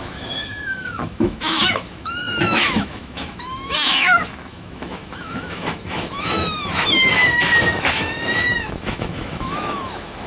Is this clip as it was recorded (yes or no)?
no